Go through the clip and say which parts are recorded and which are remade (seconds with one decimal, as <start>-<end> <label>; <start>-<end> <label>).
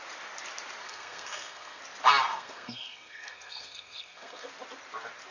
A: 0.0-0.8 recorded; 0.8-1.8 remade; 1.8-2.3 recorded; 2.3-4.5 remade; 4.5-5.3 recorded